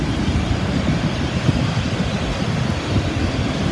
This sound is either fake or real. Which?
real